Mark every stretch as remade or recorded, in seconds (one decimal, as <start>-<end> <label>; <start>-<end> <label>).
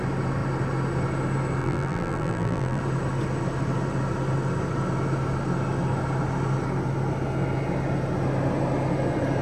0.0-1.6 recorded; 1.6-2.8 remade; 2.8-9.4 recorded